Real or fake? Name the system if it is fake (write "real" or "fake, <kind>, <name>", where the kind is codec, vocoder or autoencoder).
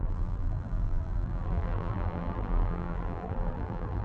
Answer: fake, vocoder, BigVGAN v2